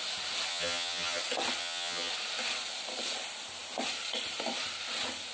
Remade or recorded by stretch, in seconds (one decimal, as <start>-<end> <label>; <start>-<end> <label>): 0.0-0.5 recorded; 0.5-1.2 remade; 1.2-1.6 recorded; 1.6-2.1 remade; 2.1-5.3 recorded